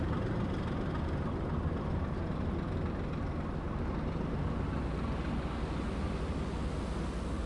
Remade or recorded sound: recorded